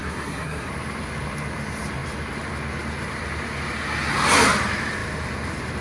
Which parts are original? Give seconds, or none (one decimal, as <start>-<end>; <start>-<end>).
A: 0.7-5.8